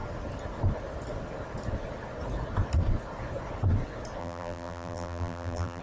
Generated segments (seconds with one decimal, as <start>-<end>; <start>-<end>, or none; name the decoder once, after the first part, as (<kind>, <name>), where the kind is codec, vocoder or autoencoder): 4.2-5.8 (vocoder, BigVGAN v2)